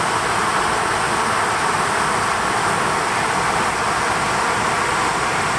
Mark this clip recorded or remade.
recorded